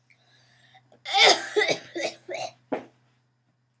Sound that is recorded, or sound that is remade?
recorded